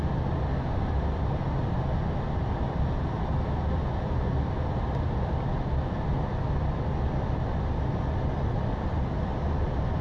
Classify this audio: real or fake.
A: real